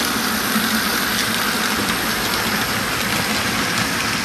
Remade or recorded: recorded